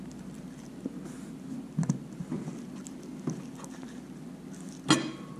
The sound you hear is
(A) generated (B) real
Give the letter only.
B